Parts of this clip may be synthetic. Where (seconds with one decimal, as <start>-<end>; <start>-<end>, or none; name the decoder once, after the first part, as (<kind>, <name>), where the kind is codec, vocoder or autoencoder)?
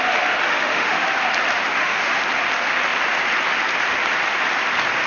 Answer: 0.5-1.1 (autoencoder, DAC-VAE); 1.7-2.2